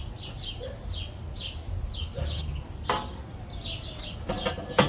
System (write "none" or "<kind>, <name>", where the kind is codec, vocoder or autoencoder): none